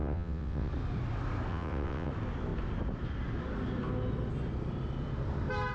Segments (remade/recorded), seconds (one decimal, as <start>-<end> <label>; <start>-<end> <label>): 0.0-0.7 remade; 0.7-1.5 recorded; 1.5-2.1 remade; 2.1-5.7 recorded